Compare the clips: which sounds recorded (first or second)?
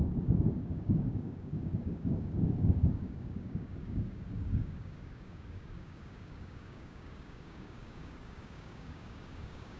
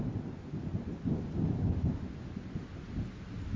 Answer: second